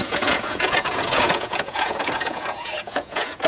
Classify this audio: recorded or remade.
remade